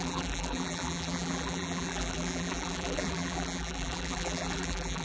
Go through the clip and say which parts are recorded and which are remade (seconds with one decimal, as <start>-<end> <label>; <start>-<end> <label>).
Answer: 0.0-5.0 remade